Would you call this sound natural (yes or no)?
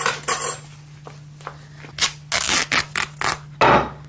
yes